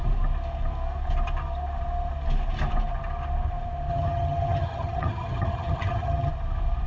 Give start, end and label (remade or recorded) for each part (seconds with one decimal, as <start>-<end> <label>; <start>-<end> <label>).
0.0-3.9 recorded; 3.9-6.3 remade; 6.3-6.9 recorded